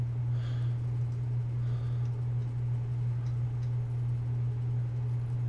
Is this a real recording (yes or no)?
yes